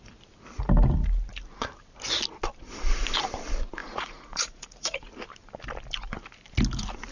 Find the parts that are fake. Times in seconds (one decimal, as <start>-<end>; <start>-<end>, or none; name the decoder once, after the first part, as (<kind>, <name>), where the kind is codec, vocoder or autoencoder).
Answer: 3.8-5.1 (vocoder, Vocos)